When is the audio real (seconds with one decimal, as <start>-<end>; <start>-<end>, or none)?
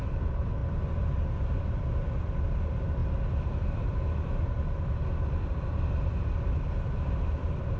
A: 3.0-5.3